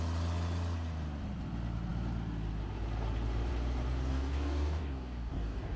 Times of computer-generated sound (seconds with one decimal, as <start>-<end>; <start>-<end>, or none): 4.1-5.8